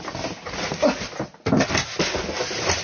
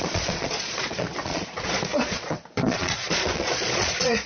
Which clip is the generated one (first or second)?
second